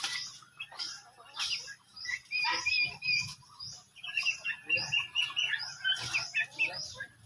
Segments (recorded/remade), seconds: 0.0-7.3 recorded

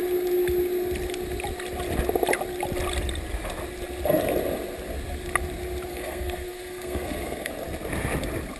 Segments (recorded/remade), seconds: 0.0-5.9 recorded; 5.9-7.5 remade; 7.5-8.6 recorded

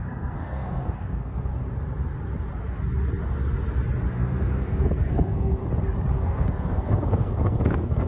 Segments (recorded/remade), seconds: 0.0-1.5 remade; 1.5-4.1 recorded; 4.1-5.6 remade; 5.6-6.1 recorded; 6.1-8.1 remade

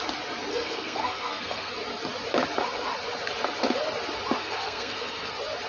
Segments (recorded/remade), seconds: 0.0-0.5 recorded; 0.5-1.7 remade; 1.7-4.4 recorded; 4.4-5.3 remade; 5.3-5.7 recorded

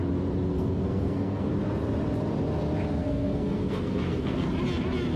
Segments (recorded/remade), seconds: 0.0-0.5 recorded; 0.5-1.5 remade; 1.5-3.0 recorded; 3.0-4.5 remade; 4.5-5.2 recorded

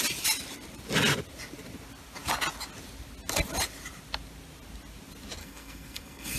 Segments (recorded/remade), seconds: 0.0-5.4 recorded; 5.4-6.4 remade

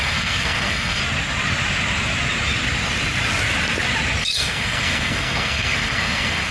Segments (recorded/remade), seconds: 0.0-1.0 remade; 1.0-4.2 recorded; 4.2-6.5 remade